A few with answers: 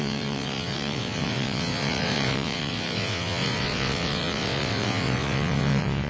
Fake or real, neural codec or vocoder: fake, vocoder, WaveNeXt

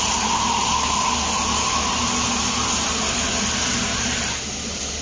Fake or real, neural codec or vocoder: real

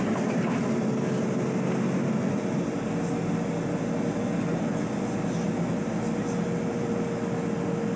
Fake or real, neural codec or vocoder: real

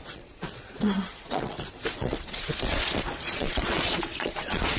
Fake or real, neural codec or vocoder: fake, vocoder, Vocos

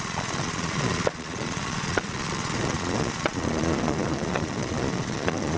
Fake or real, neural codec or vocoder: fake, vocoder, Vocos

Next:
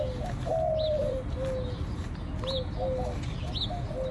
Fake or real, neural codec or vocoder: real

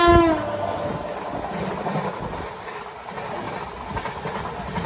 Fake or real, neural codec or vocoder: real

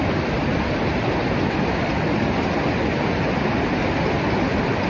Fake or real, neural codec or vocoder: real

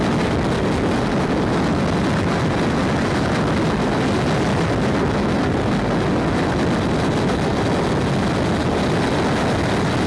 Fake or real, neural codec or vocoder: real